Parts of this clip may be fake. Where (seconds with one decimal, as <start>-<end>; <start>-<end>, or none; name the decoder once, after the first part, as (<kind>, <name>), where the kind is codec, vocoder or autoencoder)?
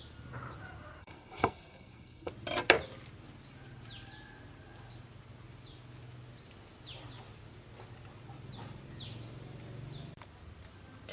1.0-2.3 (codec, SNAC)